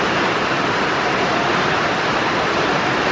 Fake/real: real